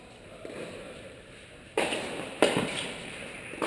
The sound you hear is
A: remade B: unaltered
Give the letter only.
A